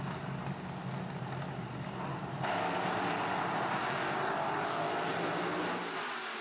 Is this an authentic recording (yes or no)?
yes